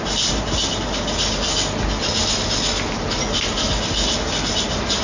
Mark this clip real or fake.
real